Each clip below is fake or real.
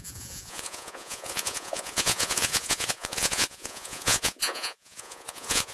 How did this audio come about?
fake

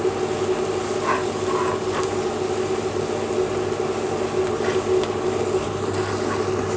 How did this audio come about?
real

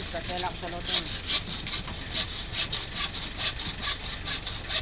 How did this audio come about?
real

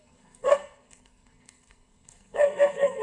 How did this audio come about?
fake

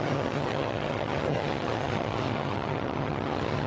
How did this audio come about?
fake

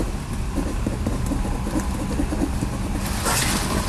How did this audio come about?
real